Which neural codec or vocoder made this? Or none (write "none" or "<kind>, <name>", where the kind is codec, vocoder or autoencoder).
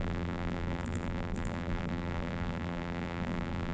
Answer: vocoder, BigVGAN v2